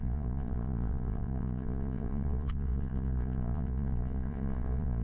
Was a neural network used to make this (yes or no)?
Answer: yes